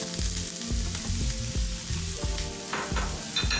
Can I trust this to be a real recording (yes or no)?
yes